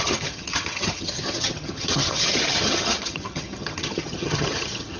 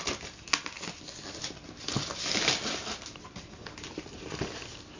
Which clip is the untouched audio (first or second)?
second